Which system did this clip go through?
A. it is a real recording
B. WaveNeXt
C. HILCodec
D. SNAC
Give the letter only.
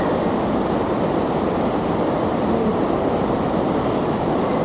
A